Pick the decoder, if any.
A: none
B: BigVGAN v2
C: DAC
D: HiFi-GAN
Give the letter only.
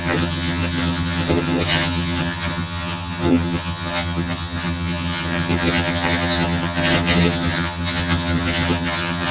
D